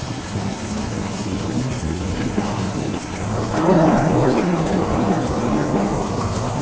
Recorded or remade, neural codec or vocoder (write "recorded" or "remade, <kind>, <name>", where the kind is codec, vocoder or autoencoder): remade, codec, SNAC